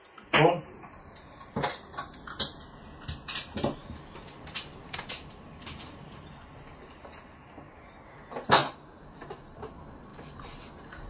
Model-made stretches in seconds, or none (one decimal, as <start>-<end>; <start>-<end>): 3.8-5.6; 10.1-10.7